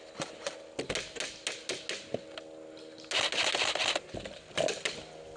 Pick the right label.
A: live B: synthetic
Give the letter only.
A